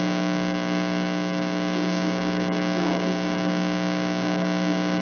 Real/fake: fake